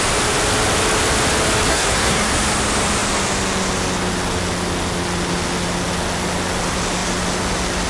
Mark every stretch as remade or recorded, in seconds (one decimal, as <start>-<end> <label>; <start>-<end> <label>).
0.0-1.7 recorded; 1.7-2.3 remade; 2.3-7.9 recorded